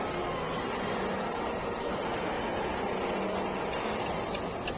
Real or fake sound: real